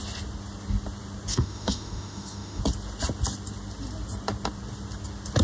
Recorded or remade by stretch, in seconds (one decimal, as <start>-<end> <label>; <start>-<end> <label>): 0.0-1.3 recorded; 1.3-2.6 remade; 2.6-5.4 recorded